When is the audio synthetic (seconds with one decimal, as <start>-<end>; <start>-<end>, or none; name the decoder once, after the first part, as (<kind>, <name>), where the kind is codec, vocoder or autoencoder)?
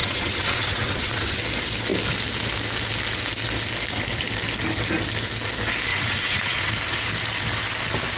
0.0-1.4 (vocoder, WaveNeXt); 5.9-6.7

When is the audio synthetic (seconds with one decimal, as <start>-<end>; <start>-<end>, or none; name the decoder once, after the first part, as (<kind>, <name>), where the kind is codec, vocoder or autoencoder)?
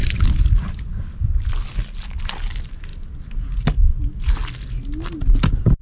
none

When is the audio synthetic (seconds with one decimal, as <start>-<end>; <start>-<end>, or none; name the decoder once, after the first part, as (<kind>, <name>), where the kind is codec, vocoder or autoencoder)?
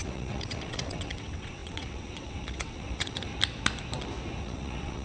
0.0-3.3 (vocoder, WaveNeXt); 4.4-5.0